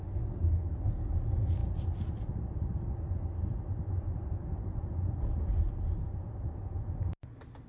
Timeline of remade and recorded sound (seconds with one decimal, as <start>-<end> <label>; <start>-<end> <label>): 0.0-7.7 recorded